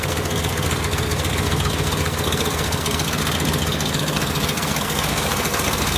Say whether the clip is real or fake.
fake